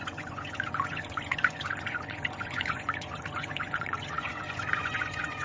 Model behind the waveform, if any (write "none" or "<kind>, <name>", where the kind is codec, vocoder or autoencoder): vocoder, Vocos